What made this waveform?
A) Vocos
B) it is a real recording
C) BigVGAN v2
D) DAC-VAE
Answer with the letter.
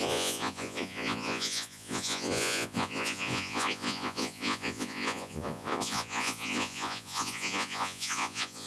A